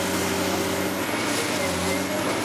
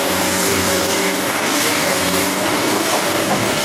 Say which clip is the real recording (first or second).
first